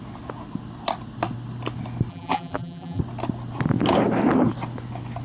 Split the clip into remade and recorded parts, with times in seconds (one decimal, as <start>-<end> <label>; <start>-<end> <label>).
0.0-2.1 recorded; 2.1-3.0 remade; 3.0-5.2 recorded